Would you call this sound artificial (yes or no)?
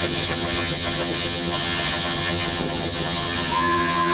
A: yes